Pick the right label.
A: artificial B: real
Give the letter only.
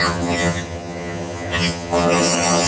A